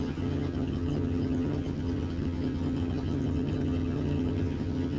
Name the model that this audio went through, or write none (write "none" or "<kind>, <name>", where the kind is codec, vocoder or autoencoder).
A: vocoder, HiFi-GAN